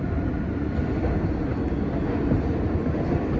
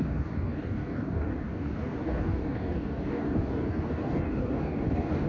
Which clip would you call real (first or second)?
first